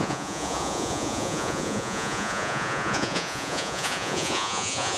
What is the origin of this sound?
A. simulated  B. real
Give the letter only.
A